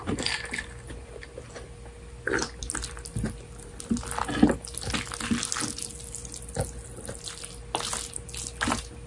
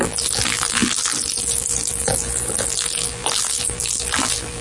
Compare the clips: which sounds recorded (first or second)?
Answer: first